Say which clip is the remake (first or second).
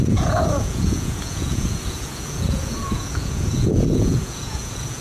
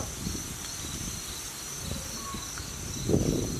first